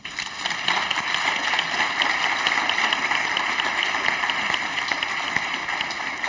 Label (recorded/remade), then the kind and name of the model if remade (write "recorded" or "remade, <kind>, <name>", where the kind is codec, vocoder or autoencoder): remade, vocoder, BigVGAN v2